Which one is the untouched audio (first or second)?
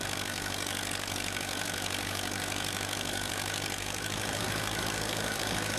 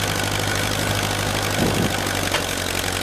second